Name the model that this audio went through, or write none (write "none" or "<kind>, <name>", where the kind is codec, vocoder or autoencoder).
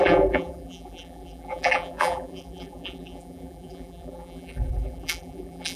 vocoder, BigVGAN v2